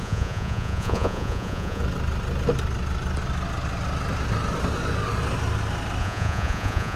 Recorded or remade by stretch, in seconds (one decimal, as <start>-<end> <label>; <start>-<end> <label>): 0.0-1.8 remade; 1.8-6.0 recorded; 6.0-7.0 remade